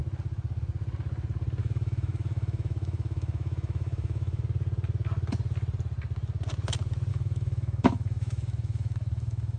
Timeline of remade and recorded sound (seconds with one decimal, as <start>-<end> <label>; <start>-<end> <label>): 0.0-1.6 recorded; 1.6-4.4 remade; 4.4-7.1 recorded; 7.1-9.6 remade